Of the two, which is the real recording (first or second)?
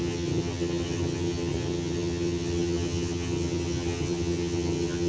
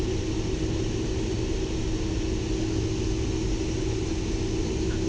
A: second